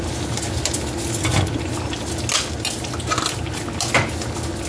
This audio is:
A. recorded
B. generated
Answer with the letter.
A